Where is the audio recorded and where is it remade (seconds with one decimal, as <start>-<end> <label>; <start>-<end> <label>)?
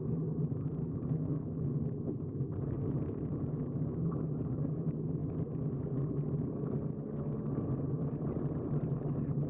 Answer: 0.0-0.6 recorded; 0.6-1.4 remade; 1.4-9.5 recorded